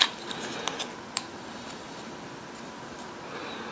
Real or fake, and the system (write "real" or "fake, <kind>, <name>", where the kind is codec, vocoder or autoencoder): real